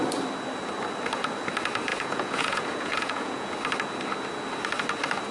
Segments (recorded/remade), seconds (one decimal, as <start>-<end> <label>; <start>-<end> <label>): 0.0-1.9 recorded; 1.9-3.5 remade; 3.5-5.3 recorded